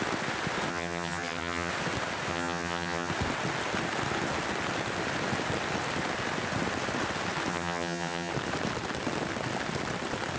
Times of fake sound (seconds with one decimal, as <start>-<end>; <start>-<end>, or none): 0.7-1.7; 2.3-3.1; 7.5-8.3